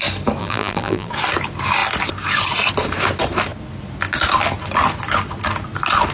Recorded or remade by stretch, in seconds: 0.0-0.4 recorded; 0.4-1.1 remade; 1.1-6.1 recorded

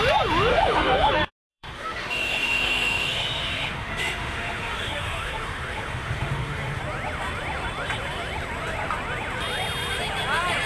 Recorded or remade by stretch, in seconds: 0.0-0.5 recorded; 0.5-1.1 remade; 1.1-1.5 recorded; 1.5-6.8 remade; 6.8-10.7 recorded

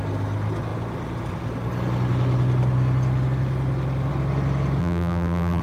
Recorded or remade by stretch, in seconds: 0.0-4.8 recorded; 4.8-5.6 remade

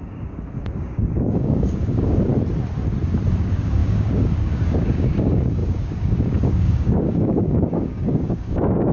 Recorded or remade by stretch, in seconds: 0.0-2.3 remade; 2.3-3.4 recorded; 3.4-8.9 remade

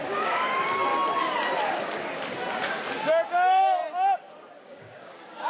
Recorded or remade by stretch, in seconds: 0.0-0.9 remade; 0.9-3.3 recorded; 3.3-3.8 remade; 3.8-4.6 recorded; 4.6-5.5 remade